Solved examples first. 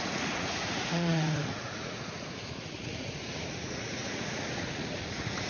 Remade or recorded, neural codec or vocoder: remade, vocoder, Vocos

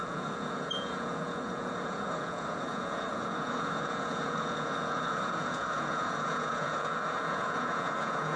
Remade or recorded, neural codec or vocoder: remade, vocoder, Vocos